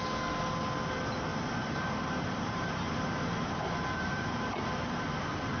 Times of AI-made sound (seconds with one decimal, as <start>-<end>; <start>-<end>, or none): 1.3-4.7